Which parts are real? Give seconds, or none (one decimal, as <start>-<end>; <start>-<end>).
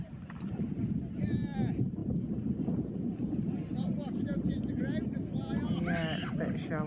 0.0-6.9